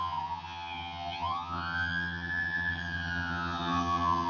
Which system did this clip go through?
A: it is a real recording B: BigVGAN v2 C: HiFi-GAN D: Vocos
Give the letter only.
C